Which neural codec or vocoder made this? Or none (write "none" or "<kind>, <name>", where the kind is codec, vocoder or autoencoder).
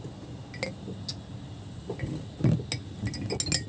none